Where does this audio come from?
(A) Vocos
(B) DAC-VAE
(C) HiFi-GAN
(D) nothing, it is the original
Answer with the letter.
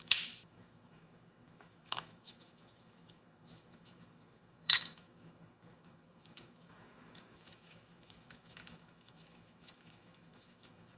B